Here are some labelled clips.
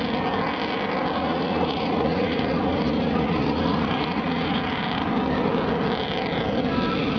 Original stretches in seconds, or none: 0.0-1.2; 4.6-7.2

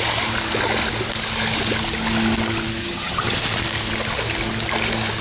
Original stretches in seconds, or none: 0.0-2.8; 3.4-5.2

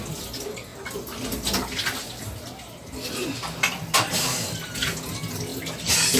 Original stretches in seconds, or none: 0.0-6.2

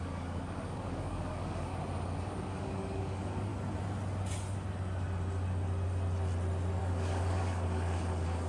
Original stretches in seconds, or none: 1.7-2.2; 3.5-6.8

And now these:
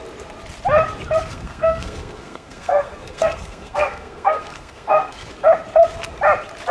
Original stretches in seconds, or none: 0.0-1.3; 5.3-6.7

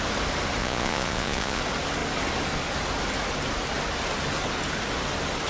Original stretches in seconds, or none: 0.0-0.6; 1.6-5.5